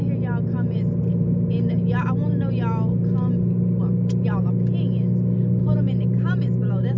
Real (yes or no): yes